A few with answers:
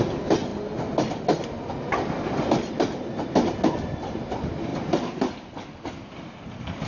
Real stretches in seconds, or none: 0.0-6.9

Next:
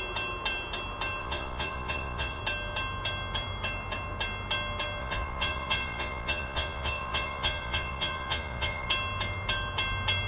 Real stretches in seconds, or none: 0.0-1.2; 2.4-5.0; 8.9-10.3

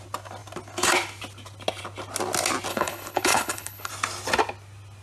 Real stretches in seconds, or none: 0.0-2.7; 3.9-5.0

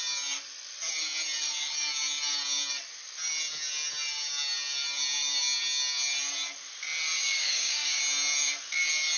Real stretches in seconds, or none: 0.0-7.2; 8.0-9.2

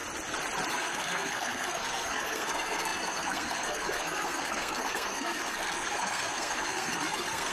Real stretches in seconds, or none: 0.0-0.7

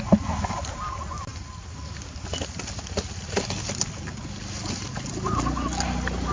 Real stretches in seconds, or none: 0.0-6.3